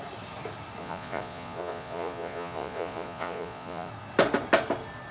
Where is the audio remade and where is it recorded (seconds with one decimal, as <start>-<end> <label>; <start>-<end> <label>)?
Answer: 0.0-0.8 recorded; 0.8-3.9 remade; 3.9-5.1 recorded